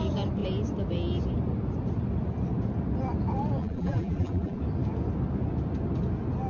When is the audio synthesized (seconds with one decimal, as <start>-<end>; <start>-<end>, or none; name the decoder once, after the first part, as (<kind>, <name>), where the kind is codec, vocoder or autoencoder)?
3.6-4.6 (vocoder, BigVGAN v2)